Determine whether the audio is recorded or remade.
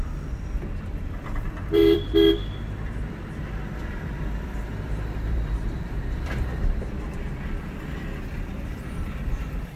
remade